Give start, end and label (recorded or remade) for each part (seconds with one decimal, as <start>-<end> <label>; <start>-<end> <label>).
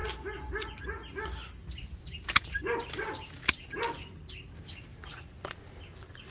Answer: 0.0-6.3 recorded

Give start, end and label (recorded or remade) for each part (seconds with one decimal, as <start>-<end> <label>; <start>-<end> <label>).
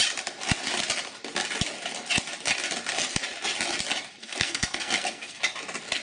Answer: 0.0-4.2 recorded; 4.2-5.4 remade; 5.4-6.0 recorded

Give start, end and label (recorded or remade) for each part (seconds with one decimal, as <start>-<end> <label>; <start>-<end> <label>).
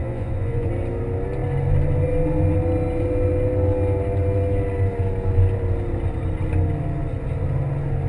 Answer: 0.0-0.7 remade; 0.7-8.1 recorded